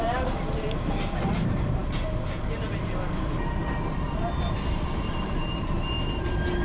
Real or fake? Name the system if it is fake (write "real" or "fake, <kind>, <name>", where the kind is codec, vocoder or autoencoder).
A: fake, vocoder, BigVGAN v2